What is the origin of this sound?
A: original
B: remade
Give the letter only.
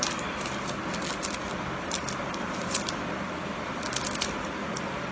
A